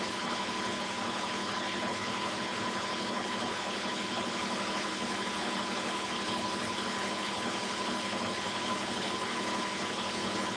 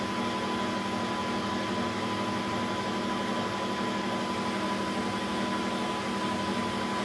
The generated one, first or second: first